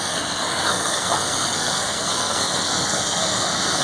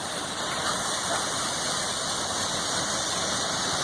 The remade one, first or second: first